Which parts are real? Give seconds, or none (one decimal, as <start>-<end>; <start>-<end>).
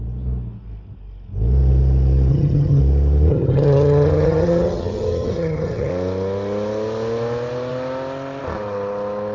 0.0-2.3; 2.8-3.3; 5.9-9.3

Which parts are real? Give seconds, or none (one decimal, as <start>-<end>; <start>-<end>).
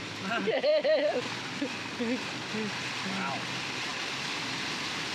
0.0-5.1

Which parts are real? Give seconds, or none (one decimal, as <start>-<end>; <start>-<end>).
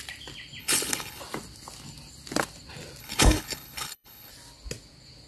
0.0-0.6; 1.2-3.0; 4.3-5.3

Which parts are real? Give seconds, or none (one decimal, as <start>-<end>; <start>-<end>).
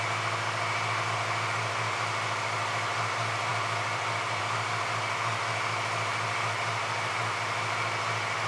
0.0-3.5; 4.4-8.5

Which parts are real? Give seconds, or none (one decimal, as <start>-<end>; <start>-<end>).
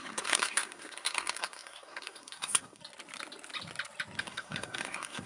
2.8-4.2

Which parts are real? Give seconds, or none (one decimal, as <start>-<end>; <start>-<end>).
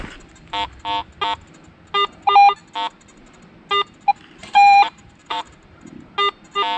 0.0-4.4; 5.9-6.8